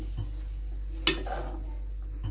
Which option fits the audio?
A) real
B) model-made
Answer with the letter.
A